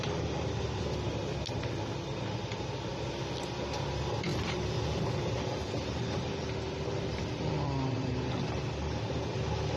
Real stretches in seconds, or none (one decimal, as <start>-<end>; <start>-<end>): 0.0-4.3; 8.3-9.8